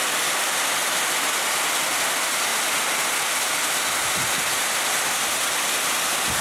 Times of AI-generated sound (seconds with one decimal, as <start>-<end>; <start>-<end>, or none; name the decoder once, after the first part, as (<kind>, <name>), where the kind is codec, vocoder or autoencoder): none